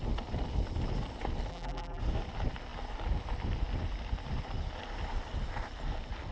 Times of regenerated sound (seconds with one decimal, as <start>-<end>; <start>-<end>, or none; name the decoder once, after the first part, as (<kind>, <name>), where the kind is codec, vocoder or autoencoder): 1.5-2.0 (vocoder, BigVGAN v2)